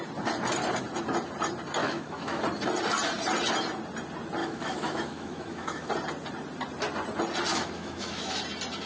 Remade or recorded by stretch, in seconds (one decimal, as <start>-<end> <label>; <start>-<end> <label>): 0.0-1.8 recorded; 1.8-2.4 remade; 2.4-4.4 recorded; 4.4-5.9 remade; 5.9-7.5 recorded; 7.5-8.4 remade; 8.4-8.9 recorded